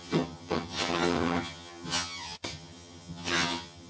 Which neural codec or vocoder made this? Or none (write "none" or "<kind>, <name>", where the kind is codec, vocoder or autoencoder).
vocoder, HiFi-GAN